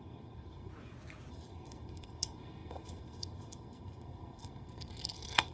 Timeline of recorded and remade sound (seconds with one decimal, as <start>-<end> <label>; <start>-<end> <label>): 0.0-0.7 remade; 0.7-1.3 recorded; 1.3-5.5 remade